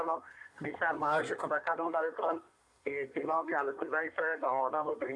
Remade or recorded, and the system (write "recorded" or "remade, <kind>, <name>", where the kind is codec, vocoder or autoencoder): remade, codec, SNAC